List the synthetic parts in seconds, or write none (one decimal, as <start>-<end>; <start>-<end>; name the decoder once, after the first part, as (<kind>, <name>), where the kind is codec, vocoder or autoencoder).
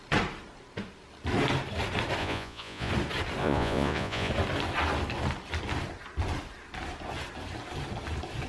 2.2-2.9 (vocoder, Vocos); 3.4-4.3